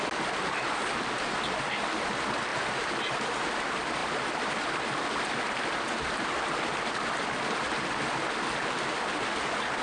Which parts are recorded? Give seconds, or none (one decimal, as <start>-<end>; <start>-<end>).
0.0-9.8